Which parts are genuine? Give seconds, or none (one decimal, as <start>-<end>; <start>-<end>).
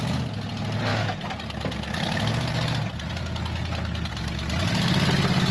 0.0-5.5